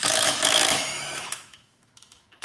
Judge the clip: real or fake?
fake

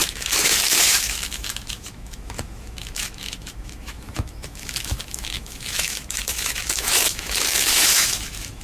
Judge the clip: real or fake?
fake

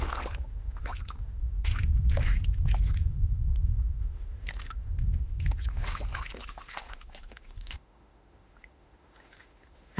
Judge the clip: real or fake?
fake